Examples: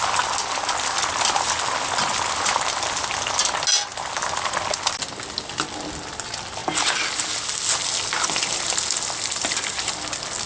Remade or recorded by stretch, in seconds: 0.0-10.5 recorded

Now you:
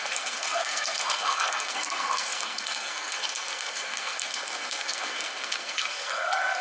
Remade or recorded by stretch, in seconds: 0.0-6.6 remade

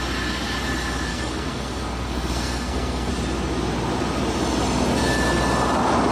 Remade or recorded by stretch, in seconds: 0.0-1.1 recorded; 1.1-3.1 remade; 3.1-6.1 recorded

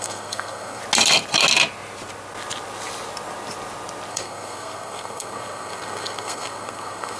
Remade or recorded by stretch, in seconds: 0.0-0.8 remade; 0.8-4.1 recorded; 4.1-7.2 remade

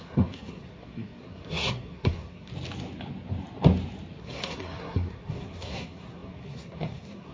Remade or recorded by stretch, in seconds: 0.0-2.5 remade; 2.5-4.2 recorded; 4.2-7.3 remade

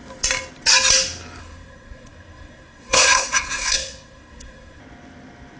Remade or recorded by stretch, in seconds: 0.0-1.4 recorded; 1.4-4.8 remade; 4.8-5.6 recorded